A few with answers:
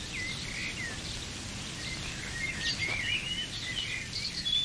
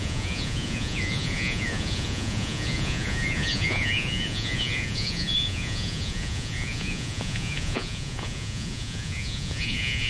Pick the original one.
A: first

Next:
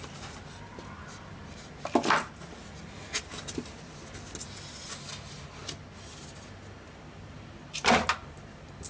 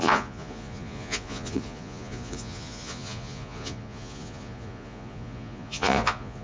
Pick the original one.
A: first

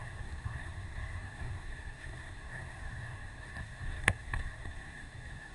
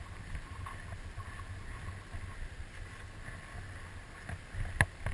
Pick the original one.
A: second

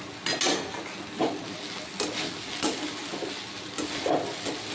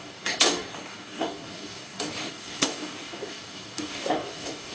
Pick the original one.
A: first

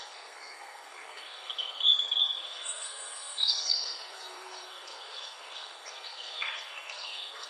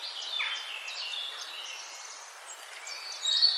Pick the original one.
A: second